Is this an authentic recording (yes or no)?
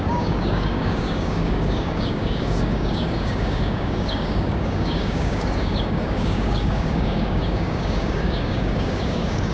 no